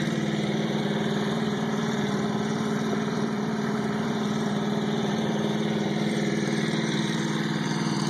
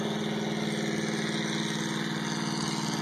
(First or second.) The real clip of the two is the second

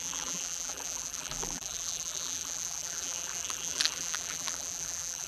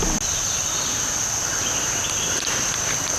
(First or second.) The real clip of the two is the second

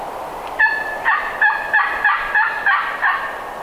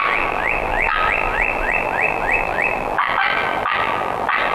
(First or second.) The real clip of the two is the first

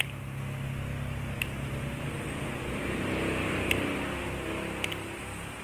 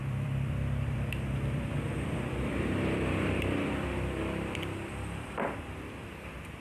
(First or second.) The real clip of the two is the first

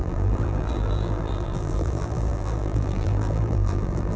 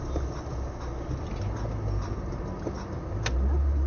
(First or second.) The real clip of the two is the second